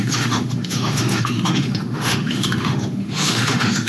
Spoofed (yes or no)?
yes